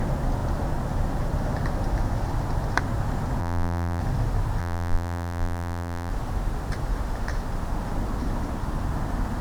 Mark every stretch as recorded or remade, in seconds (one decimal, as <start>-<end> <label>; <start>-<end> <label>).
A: 0.0-3.4 recorded; 3.4-4.0 remade; 4.0-4.6 recorded; 4.6-6.1 remade; 6.1-9.4 recorded